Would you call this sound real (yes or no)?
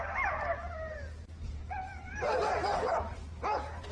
no